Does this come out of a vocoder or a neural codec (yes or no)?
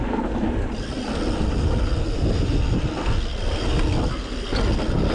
no